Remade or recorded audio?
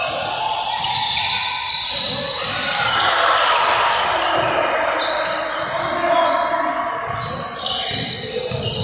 recorded